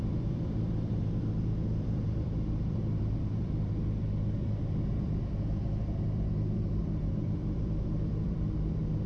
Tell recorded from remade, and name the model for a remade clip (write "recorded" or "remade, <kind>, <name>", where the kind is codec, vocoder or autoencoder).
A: remade, vocoder, BigVGAN v2